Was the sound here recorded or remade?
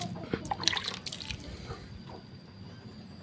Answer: recorded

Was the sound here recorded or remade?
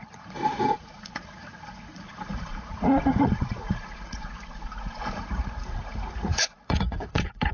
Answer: remade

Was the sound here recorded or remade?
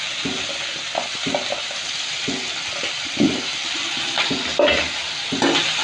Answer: recorded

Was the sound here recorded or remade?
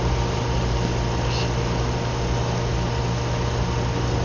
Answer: recorded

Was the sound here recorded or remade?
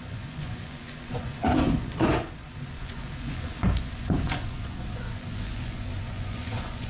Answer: remade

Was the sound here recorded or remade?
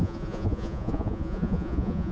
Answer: remade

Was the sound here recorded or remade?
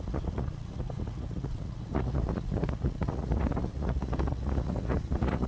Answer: remade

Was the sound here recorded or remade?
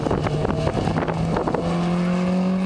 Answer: recorded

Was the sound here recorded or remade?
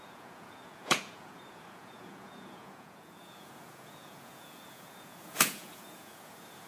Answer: remade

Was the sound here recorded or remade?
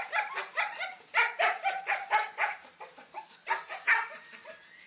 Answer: recorded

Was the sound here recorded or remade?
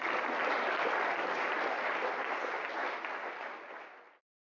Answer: recorded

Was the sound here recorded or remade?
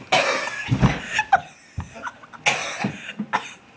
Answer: recorded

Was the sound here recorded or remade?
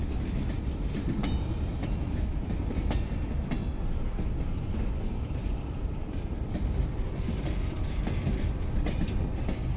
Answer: recorded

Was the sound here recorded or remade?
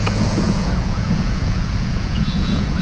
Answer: remade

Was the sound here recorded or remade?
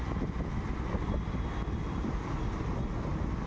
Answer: recorded